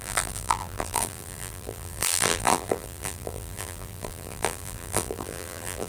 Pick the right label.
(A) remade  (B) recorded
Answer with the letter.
A